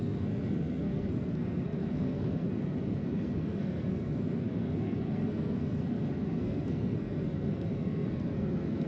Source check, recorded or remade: remade